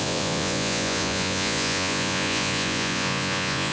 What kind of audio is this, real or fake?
fake